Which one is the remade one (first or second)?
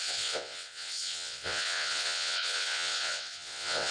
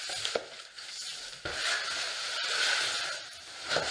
first